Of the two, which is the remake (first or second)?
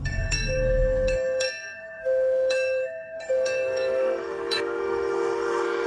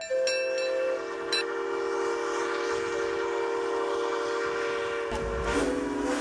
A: first